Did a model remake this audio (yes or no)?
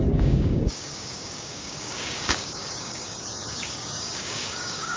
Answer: yes